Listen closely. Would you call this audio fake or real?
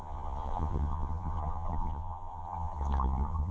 fake